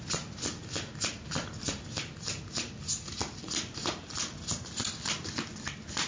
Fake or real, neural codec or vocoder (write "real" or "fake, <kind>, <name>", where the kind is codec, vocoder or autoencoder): real